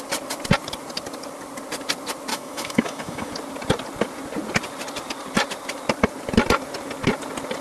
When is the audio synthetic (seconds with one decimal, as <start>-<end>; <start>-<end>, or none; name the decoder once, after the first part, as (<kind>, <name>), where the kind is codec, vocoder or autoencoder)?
2.3-3.3 (autoencoder, DAC-VAE)